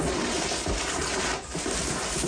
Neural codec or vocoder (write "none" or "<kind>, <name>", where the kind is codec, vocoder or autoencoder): none